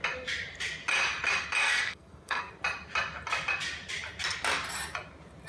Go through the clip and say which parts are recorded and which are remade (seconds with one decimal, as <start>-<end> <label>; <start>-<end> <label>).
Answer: 0.0-1.6 recorded; 1.6-2.5 remade; 2.5-5.5 recorded